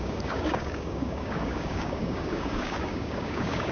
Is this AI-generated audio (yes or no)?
yes